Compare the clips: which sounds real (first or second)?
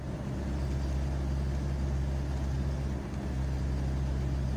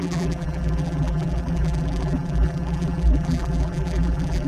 first